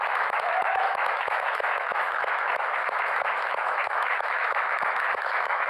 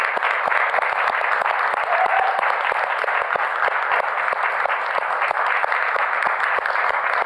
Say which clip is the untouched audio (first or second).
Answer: second